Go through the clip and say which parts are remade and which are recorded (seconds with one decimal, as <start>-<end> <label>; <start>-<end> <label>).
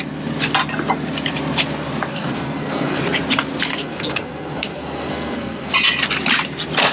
0.0-2.1 recorded; 2.1-3.0 remade; 3.0-3.7 recorded; 3.7-5.7 remade; 5.7-6.9 recorded